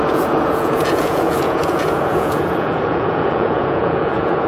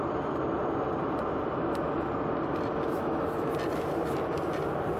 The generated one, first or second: first